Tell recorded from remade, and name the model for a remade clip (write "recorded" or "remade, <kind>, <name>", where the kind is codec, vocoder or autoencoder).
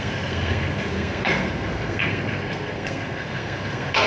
remade, codec, SNAC